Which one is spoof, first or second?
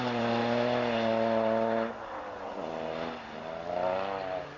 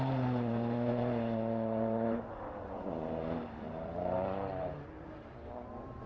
second